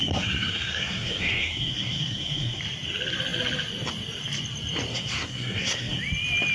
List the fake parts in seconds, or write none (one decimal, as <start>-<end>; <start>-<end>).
0.0-2.6; 4.9-6.0